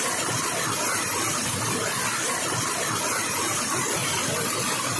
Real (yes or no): yes